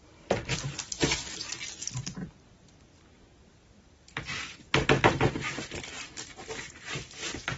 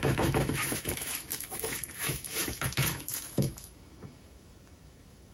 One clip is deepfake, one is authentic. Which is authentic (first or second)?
first